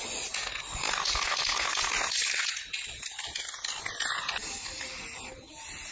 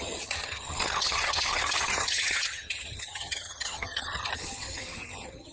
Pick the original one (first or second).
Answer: first